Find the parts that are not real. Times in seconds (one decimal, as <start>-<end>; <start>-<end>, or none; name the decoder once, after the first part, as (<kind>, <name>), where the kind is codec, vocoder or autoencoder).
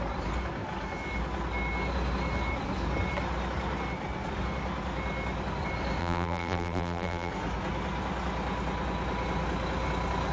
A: 6.0-7.3 (vocoder, BigVGAN v2)